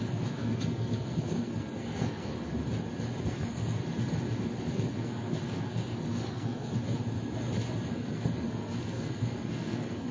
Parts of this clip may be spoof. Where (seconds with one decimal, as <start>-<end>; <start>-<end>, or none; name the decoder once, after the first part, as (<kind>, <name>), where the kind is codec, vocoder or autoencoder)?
0.0-2.5 (codec, SNAC); 3.2-3.8; 4.7-6.7; 7.9-10.1